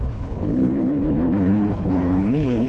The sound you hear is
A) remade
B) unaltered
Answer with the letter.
A